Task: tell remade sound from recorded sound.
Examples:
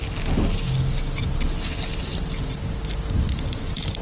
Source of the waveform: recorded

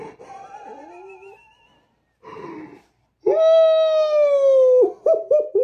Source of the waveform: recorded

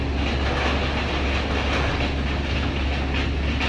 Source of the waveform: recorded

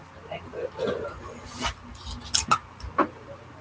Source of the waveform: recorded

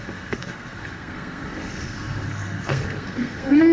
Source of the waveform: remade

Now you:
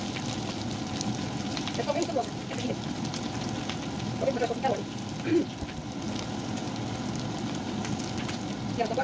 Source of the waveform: recorded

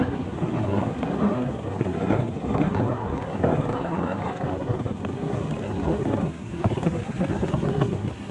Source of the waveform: remade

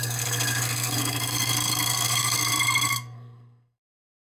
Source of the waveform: remade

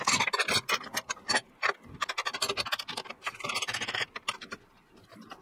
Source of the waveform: recorded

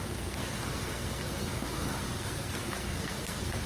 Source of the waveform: remade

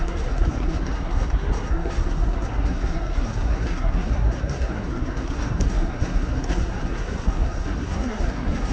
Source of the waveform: remade